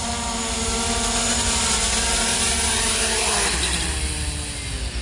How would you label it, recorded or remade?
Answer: recorded